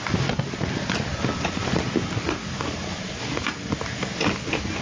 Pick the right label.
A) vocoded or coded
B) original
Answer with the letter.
B